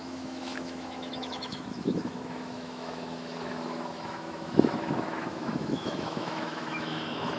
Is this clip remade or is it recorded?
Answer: remade